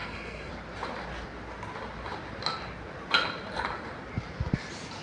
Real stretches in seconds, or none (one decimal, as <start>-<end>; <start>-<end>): 0.5-5.0